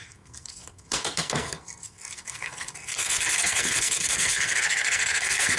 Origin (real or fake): fake